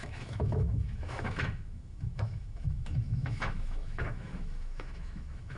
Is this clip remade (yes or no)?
yes